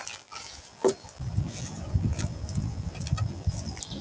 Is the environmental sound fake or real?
fake